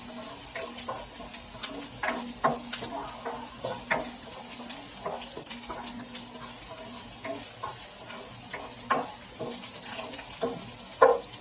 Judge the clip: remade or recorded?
recorded